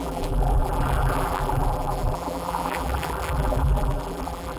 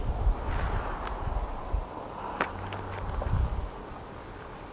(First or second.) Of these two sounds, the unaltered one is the second